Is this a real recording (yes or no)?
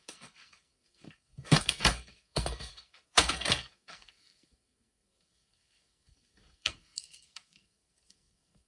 no